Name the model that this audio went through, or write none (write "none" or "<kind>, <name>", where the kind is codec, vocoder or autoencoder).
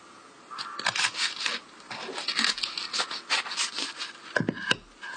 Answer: none